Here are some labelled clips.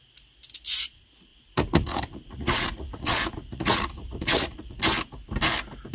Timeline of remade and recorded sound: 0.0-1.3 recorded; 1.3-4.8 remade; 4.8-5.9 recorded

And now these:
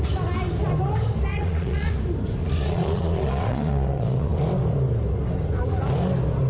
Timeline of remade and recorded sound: 0.0-1.3 recorded; 1.3-1.9 remade; 1.9-2.4 recorded; 2.4-4.4 remade; 4.4-6.5 recorded

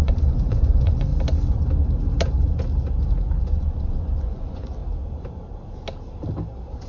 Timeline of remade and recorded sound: 0.0-1.1 remade; 1.1-3.4 recorded; 3.4-4.8 remade; 4.8-6.9 recorded

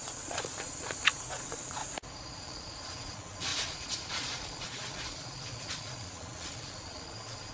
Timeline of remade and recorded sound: 0.0-1.8 remade; 1.8-2.4 recorded; 2.4-7.5 remade